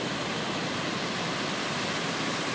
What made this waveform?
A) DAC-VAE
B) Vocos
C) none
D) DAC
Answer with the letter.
C